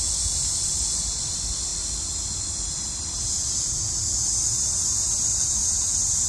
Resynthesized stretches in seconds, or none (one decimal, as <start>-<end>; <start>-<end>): 1.7-3.3; 5.6-6.3